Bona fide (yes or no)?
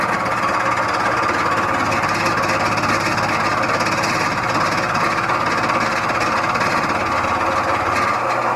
yes